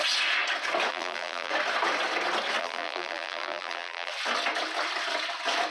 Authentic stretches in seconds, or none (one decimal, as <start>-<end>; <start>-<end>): 0.0-0.9; 1.5-2.6; 4.1-5.7